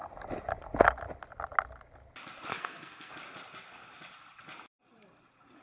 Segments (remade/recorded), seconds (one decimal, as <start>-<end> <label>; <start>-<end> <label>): 0.0-2.5 recorded; 2.5-3.1 remade; 3.1-5.6 recorded